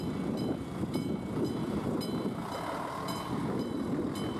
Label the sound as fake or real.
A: real